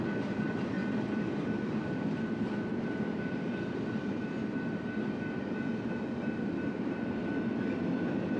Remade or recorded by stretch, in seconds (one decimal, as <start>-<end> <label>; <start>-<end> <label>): 0.0-0.8 recorded; 0.8-4.7 remade; 4.7-8.4 recorded